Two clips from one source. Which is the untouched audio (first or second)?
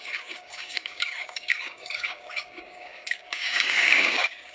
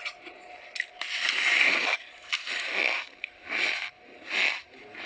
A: second